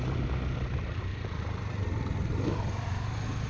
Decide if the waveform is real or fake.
fake